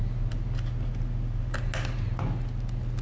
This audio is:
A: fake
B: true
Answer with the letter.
B